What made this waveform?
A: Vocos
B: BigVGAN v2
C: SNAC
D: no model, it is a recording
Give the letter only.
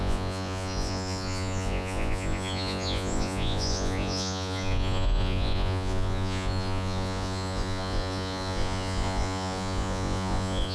A